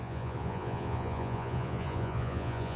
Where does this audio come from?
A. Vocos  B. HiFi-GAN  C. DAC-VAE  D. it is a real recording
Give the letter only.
A